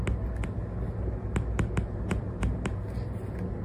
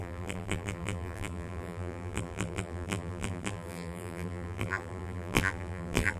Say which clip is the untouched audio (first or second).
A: first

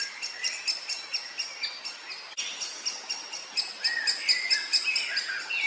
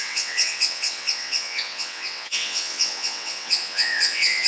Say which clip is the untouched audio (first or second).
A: first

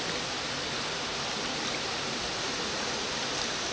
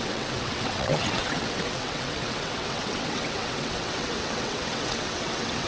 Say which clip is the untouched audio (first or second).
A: first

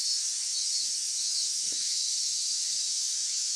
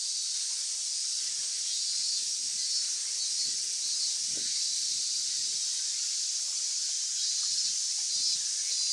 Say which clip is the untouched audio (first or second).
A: second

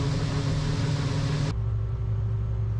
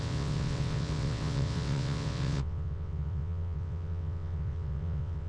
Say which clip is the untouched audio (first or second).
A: first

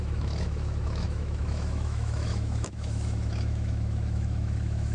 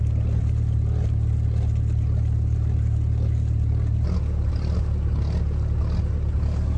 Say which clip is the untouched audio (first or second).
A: second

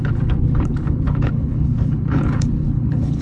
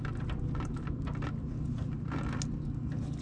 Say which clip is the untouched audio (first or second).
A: second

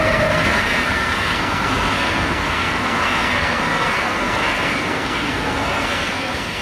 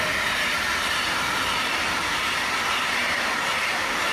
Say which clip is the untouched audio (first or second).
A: second